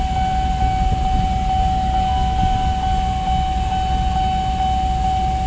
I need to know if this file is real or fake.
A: real